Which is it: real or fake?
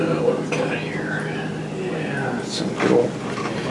real